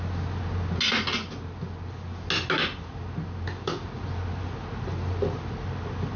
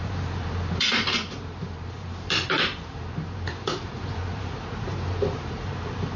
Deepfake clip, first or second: second